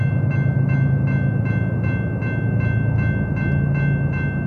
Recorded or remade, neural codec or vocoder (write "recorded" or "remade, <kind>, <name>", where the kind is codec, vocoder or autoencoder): recorded